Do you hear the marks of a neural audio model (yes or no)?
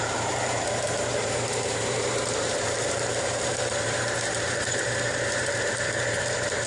yes